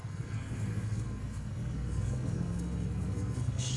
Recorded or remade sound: remade